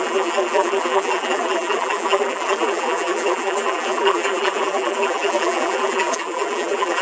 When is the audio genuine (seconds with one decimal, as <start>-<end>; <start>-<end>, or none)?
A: none